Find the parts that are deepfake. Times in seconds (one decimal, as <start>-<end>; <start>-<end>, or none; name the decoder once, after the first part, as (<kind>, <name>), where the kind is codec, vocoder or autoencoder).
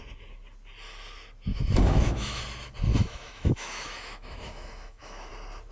1.5-2.4 (autoencoder, DAC-VAE); 2.9-5.3